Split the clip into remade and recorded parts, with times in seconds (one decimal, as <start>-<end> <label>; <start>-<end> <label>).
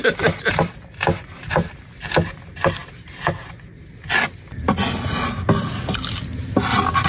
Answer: 0.0-7.1 recorded